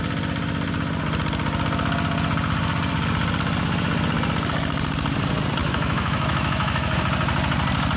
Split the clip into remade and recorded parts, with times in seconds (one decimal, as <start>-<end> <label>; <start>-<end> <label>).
0.0-5.6 recorded; 5.6-7.0 remade; 7.0-8.0 recorded